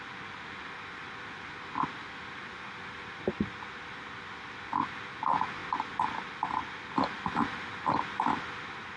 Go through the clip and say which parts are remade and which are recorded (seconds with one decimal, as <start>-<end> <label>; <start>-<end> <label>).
0.0-9.0 recorded